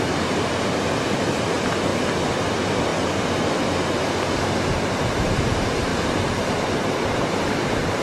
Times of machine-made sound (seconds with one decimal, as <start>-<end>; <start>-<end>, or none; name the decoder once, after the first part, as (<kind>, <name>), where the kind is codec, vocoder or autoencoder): 0.0-1.9 (vocoder, BigVGAN v2); 2.5-2.9; 4.0-8.0